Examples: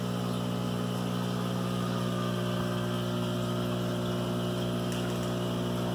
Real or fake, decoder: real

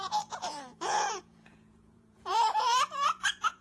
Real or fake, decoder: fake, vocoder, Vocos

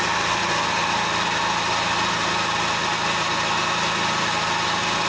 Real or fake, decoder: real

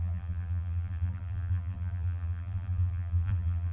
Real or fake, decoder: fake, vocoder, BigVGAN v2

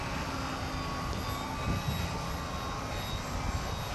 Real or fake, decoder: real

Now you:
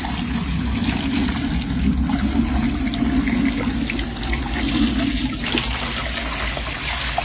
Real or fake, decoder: real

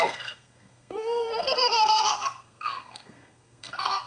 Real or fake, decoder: fake, codec, SNAC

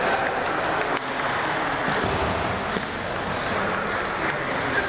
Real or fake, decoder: real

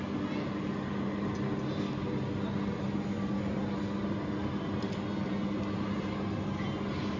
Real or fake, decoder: real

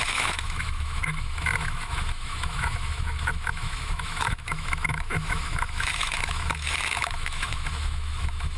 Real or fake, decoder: fake, autoencoder, DAC-VAE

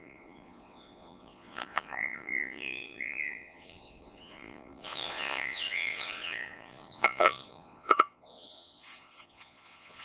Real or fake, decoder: fake, vocoder, Vocos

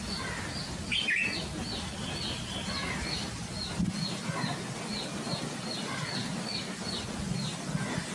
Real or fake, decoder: real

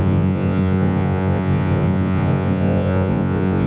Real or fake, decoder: fake, vocoder, Vocos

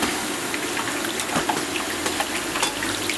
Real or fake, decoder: real